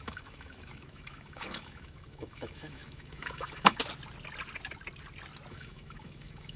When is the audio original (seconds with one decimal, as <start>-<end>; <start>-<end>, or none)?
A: 3.8-5.5